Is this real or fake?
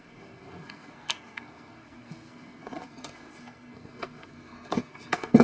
fake